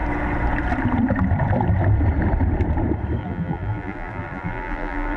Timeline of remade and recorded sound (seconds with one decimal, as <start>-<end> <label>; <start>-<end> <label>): 0.0-3.2 recorded; 3.2-5.2 remade